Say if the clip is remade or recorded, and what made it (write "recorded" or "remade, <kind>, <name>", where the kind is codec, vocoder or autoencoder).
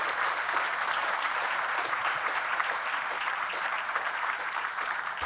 remade, vocoder, BigVGAN v2